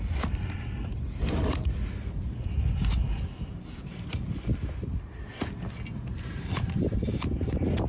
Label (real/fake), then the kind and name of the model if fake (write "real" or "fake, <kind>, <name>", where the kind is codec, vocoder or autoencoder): real